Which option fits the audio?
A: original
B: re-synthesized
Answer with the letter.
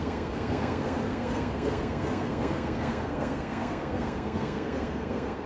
B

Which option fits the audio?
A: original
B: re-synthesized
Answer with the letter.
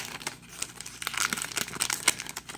A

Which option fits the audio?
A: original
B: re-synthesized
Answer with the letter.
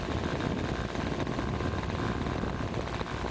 A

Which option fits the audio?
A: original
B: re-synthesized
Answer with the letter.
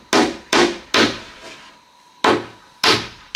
A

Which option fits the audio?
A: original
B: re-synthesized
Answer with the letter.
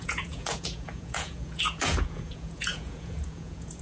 B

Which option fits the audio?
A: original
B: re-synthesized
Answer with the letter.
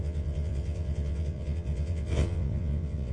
B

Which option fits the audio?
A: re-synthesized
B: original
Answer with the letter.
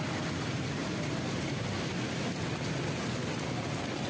B